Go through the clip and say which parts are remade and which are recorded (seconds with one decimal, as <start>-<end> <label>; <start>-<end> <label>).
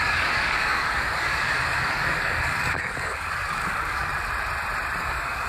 0.0-4.1 remade; 4.1-5.0 recorded; 5.0-5.5 remade